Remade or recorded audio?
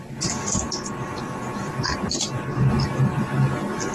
recorded